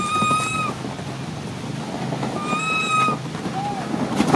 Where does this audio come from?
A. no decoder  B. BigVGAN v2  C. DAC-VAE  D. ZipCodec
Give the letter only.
A